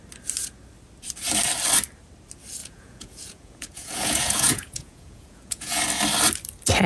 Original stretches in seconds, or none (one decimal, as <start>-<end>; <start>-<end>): 0.0-2.6; 5.8-6.9